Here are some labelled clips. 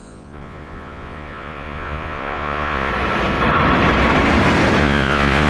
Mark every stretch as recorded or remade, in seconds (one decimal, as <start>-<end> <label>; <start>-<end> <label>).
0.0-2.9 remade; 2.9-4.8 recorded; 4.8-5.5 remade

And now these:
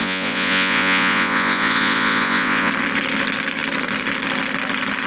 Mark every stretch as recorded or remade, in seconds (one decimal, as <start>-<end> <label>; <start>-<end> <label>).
0.0-2.7 remade; 2.7-5.1 recorded

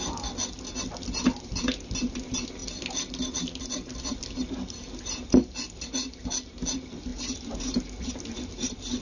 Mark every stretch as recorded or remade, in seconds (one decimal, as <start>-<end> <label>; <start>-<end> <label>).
0.0-9.0 recorded